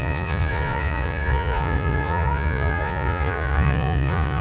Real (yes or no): no